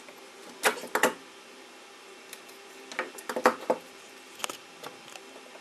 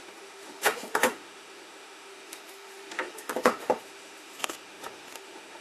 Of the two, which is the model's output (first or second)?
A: second